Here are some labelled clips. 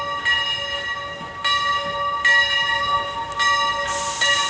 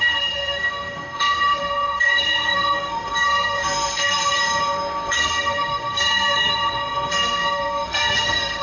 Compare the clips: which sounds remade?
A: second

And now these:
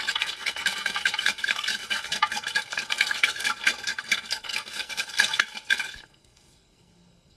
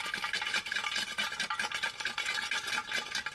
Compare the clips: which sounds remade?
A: first